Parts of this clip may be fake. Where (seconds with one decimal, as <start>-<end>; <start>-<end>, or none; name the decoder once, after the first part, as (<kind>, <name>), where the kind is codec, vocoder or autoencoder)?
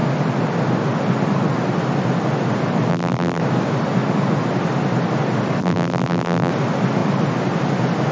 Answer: 2.9-3.4 (vocoder, BigVGAN v2); 5.6-6.5